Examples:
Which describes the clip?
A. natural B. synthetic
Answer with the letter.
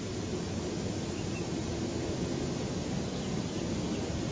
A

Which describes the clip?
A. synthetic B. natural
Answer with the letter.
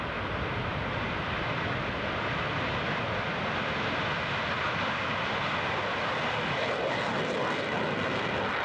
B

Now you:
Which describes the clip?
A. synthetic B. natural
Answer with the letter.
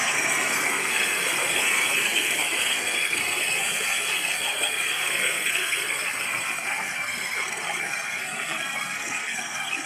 A